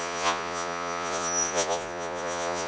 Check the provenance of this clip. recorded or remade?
remade